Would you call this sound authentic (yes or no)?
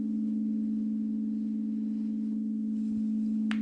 yes